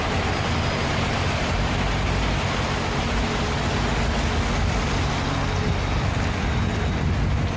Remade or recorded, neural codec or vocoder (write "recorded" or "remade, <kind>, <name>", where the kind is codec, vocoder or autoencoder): recorded